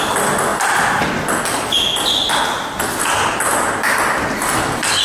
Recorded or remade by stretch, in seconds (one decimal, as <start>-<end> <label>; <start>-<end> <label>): 0.0-5.0 recorded